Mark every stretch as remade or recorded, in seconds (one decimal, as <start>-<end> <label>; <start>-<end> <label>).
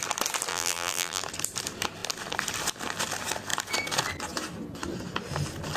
0.0-0.5 recorded; 0.5-1.2 remade; 1.2-5.8 recorded